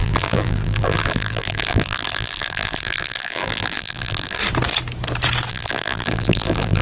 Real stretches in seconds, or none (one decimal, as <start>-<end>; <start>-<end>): 4.4-5.5